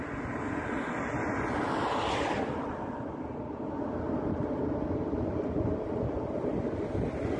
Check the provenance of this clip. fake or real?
real